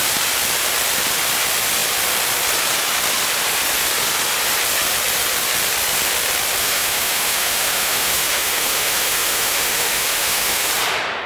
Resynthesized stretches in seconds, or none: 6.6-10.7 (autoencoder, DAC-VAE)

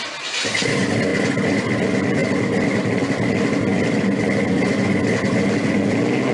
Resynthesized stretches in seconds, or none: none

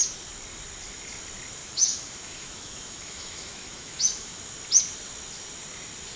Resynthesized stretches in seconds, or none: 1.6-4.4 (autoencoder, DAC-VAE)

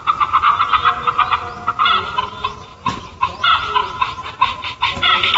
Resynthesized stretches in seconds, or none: none

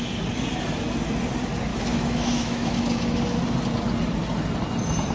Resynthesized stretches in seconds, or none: 1.7-3.4 (autoencoder, DAC-VAE)

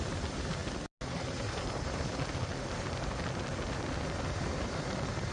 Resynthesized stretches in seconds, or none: none

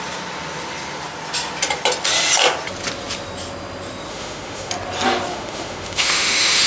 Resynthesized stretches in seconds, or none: 4.1-4.7 (autoencoder, DAC-VAE); 5.3-6.7